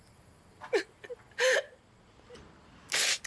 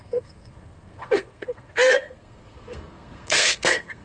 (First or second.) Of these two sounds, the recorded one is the first